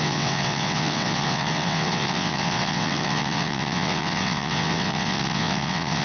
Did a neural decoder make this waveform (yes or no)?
yes